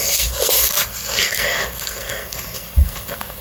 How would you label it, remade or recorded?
remade